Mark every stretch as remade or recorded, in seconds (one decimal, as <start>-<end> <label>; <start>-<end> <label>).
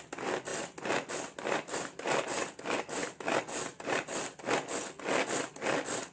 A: 0.0-6.1 recorded